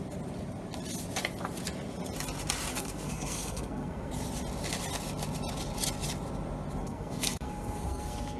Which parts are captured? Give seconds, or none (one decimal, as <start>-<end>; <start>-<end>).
0.0-2.7; 4.1-6.8